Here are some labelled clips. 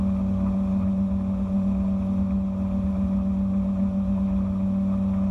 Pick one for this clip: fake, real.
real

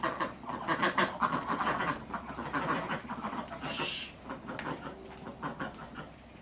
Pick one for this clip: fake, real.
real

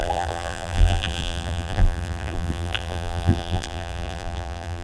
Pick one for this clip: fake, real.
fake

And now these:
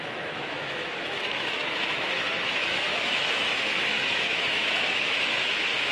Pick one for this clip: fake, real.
fake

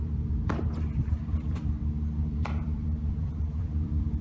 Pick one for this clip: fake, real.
fake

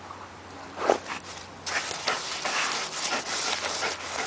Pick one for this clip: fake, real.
real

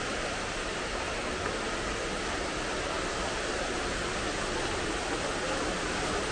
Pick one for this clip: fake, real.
real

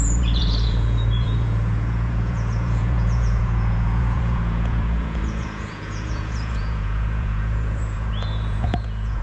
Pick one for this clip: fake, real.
fake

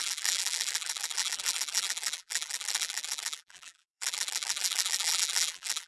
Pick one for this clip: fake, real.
fake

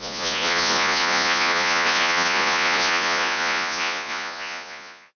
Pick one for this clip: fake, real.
fake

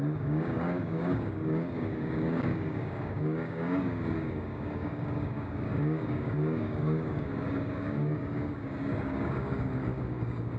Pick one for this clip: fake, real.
fake